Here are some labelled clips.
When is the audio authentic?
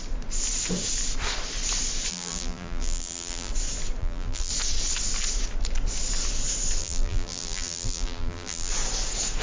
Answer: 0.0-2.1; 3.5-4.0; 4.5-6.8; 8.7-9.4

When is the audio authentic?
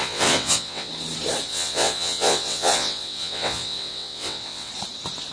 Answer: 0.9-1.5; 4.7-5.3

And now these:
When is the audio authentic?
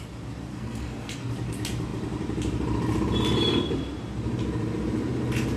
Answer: 0.0-0.5; 1.3-5.6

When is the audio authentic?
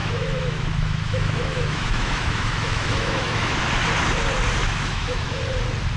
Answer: 3.6-4.6; 5.4-6.0